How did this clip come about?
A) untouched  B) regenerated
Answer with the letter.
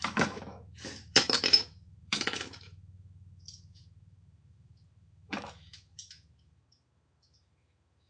B